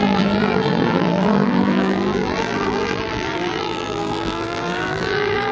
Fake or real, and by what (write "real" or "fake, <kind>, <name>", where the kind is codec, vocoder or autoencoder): fake, vocoder, BigVGAN v2